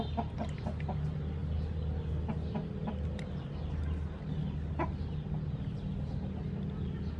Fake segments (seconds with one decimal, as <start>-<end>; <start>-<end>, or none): none